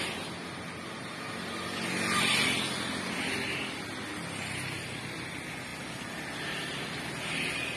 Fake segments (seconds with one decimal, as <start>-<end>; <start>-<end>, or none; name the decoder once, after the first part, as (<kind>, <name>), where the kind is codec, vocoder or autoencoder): none